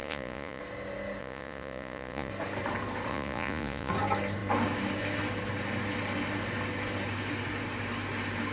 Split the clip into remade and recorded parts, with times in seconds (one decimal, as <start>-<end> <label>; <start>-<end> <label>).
0.0-0.6 remade; 0.6-1.2 recorded; 1.2-2.3 remade; 2.3-3.1 recorded; 3.1-3.9 remade; 3.9-8.5 recorded